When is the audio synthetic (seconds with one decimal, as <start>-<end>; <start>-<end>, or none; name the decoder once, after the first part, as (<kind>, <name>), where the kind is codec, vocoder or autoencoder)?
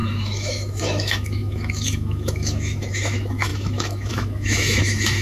0.0-5.2 (autoencoder, DAC-VAE)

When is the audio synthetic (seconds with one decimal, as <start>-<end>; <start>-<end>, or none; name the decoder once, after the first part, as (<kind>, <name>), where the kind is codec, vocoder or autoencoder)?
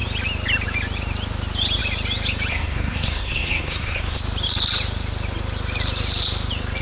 2.5-4.2 (codec, SNAC)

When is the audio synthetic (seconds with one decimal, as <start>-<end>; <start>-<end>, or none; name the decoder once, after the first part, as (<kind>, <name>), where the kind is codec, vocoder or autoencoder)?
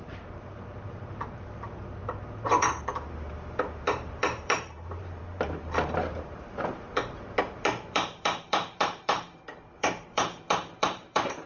0.0-11.5 (vocoder, BigVGAN v2)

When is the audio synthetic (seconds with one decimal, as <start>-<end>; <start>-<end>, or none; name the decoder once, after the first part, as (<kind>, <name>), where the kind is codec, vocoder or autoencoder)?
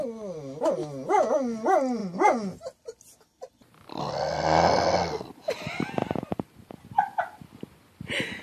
6.0-6.7 (vocoder, BigVGAN v2)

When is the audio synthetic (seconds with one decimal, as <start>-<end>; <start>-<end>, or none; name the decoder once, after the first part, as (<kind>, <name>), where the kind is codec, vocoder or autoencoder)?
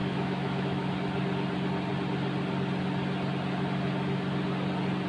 0.0-0.9 (autoencoder, DAC-VAE)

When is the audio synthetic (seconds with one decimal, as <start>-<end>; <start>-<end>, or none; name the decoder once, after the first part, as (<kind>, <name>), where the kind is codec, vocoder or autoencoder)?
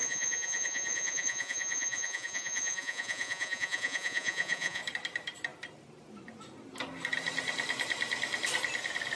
0.0-4.8 (vocoder, Vocos)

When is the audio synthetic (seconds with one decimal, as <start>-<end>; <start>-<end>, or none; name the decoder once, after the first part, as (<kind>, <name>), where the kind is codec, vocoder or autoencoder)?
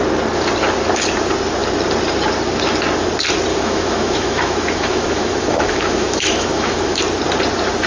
3.5-7.0 (autoencoder, DAC-VAE)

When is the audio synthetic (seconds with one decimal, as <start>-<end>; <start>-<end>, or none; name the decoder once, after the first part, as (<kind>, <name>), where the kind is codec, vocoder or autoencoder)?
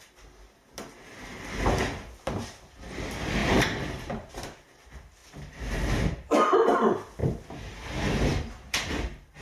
3.4-4.3 (vocoder, BigVGAN v2)